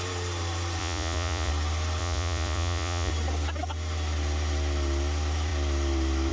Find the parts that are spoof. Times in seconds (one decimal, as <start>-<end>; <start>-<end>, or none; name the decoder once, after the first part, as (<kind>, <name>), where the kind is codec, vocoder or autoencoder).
0.8-1.5 (vocoder, Vocos); 2.0-3.1